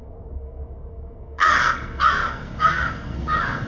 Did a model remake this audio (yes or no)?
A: yes